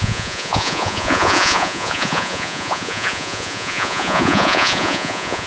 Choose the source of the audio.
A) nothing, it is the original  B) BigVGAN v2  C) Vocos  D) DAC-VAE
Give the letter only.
C